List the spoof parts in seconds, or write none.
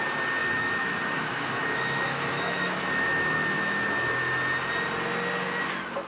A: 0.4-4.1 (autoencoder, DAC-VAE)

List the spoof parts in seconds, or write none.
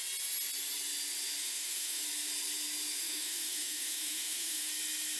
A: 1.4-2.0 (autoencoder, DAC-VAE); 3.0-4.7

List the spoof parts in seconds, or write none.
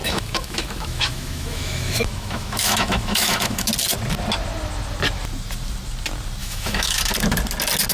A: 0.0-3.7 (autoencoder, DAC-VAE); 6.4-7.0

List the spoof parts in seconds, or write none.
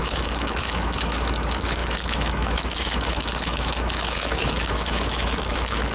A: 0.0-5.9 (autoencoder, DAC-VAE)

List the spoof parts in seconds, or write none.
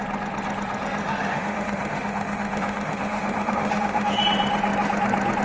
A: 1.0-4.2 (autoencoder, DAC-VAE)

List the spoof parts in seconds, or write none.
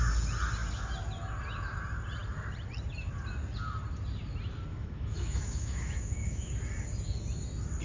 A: 4.7-6.5 (autoencoder, DAC-VAE)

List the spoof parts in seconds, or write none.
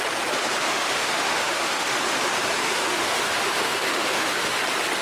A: 0.6-1.9 (autoencoder, DAC-VAE); 2.6-4.6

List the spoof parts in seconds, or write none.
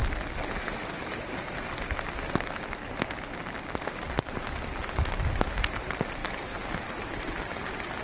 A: none